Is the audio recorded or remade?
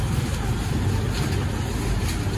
recorded